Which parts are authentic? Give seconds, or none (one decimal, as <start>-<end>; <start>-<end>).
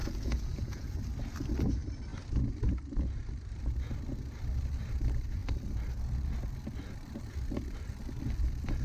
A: 1.0-8.8